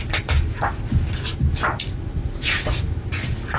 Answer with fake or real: real